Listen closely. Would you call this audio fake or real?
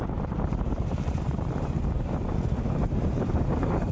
fake